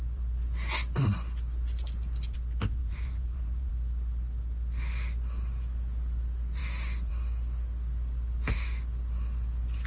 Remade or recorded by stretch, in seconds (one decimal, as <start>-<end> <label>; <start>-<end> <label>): 0.0-2.8 recorded; 2.8-3.7 remade; 3.7-9.9 recorded